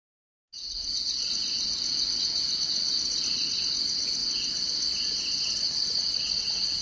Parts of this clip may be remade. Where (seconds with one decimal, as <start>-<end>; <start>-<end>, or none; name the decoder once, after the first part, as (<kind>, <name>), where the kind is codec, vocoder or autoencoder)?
none